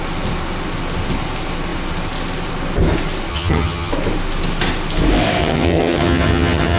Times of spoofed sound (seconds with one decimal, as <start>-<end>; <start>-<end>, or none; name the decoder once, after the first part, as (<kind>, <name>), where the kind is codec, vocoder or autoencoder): 3.3-3.9 (vocoder, HiFi-GAN); 5.4-6.8

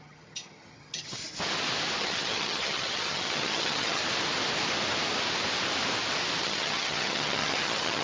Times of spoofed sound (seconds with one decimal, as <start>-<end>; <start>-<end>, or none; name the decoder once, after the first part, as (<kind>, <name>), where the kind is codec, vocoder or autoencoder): 0.0-1.2 (vocoder, HiFi-GAN); 2.0-4.0; 6.4-8.0

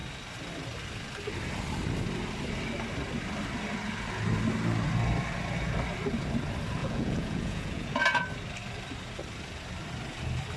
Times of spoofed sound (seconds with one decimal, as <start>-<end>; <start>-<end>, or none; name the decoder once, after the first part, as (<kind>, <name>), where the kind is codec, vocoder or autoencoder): 6.8-8.0 (vocoder, Vocos)

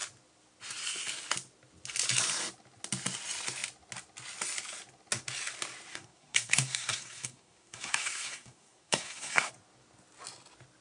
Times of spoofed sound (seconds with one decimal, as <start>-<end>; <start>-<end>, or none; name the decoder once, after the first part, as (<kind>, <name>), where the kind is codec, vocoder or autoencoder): 5.9-9.5 (codec, SNAC)

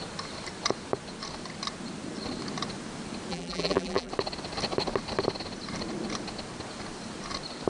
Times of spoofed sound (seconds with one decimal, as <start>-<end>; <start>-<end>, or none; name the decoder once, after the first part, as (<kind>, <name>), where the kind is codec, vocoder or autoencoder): 3.3-4.1 (vocoder, BigVGAN v2)

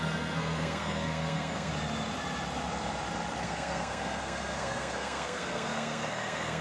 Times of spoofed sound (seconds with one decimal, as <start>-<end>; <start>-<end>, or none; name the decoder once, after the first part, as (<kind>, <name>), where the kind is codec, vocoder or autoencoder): 0.0-1.7 (codec, SNAC); 3.4-6.6

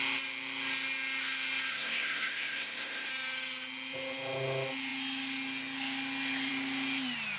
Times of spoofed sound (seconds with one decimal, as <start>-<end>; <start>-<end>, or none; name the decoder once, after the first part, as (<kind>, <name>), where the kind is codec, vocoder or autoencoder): 1.7-3.1 (codec, SNAC)

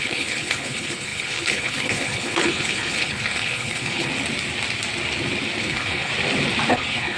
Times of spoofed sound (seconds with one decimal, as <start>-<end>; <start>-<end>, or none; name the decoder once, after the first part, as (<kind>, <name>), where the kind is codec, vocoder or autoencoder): 0.0-4.1 (codec, HILCodec); 5.6-6.1; 6.7-7.2